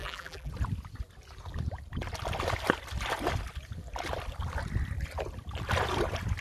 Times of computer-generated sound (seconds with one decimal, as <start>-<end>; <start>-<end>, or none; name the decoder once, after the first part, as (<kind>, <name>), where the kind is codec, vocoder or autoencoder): 0.0-0.5 (vocoder, BigVGAN v2)